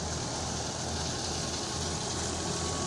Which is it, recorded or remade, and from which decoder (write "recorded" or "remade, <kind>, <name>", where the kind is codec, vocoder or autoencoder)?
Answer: recorded